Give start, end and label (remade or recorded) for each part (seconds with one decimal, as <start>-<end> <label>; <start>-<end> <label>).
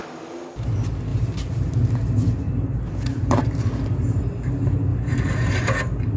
0.0-1.1 recorded; 1.1-1.7 remade; 1.7-3.1 recorded; 3.1-4.2 remade; 4.2-4.9 recorded; 4.9-5.8 remade; 5.8-6.2 recorded